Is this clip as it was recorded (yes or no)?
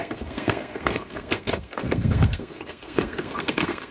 no